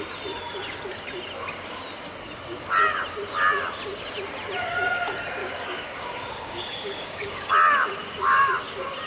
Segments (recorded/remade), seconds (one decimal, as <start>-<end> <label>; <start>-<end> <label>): 0.0-5.4 recorded; 5.4-7.5 remade; 7.5-8.0 recorded; 8.0-8.5 remade; 8.5-9.1 recorded